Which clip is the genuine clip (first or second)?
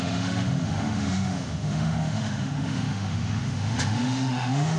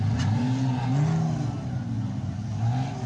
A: second